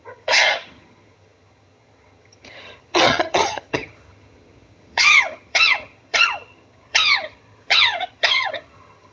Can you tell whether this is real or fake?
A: fake